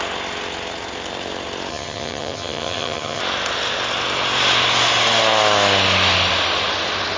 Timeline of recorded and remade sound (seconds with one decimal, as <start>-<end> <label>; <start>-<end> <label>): 0.0-1.7 recorded; 1.7-3.2 remade; 3.2-7.2 recorded